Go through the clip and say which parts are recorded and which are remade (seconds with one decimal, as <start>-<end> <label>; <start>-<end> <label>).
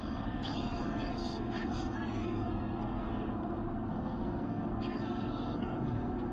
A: 0.0-6.3 remade